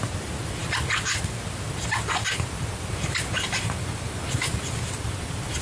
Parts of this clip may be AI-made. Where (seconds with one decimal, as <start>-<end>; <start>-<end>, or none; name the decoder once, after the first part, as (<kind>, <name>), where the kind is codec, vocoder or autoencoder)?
none